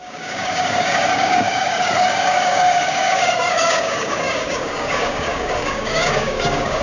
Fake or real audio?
fake